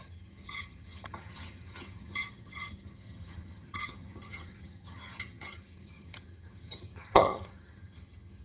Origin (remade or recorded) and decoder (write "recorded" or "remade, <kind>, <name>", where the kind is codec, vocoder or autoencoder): remade, vocoder, HiFi-GAN